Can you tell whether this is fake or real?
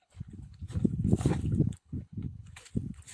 fake